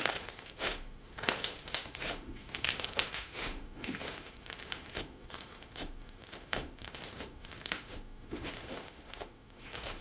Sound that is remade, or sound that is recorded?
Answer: remade